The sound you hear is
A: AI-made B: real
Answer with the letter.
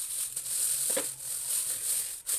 B